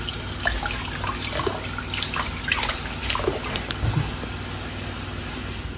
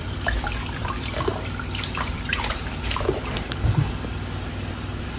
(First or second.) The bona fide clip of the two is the first